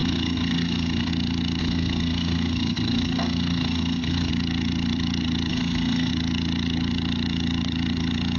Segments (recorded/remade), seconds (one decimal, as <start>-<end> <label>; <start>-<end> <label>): 0.0-1.1 remade; 1.1-1.6 recorded; 1.6-4.3 remade; 4.3-5.5 recorded; 5.5-6.1 remade; 6.1-8.4 recorded